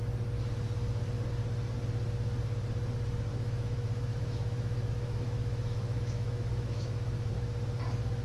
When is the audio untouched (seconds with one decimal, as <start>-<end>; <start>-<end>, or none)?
0.0-3.3; 7.3-8.2